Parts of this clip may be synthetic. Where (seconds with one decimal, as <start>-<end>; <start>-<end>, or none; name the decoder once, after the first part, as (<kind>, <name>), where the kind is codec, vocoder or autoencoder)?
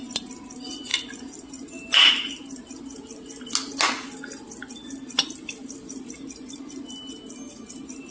none